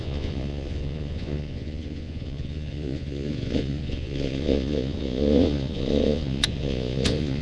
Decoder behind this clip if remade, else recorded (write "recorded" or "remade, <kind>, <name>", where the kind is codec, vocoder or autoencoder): remade, vocoder, Vocos